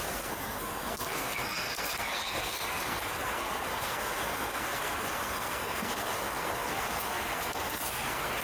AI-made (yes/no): yes